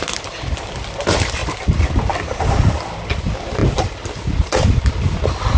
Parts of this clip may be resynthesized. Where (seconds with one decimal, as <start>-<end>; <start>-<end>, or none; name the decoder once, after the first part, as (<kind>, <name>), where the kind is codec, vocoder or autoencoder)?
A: none